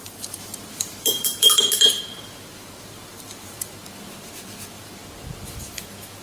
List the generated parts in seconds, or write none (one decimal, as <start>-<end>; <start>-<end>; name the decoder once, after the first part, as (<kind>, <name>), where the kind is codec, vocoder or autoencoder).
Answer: 0.0-5.0 (vocoder, BigVGAN v2)